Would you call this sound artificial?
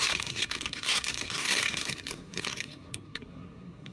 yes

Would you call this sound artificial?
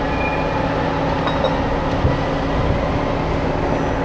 no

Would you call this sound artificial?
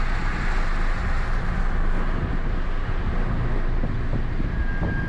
no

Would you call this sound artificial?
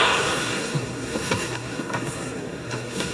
yes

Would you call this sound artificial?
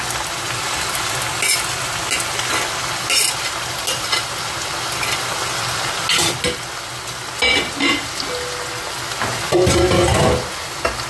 no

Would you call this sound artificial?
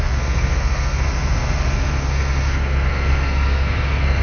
yes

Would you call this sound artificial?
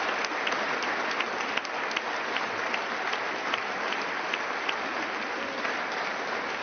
no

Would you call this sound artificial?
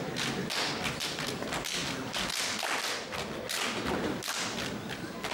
no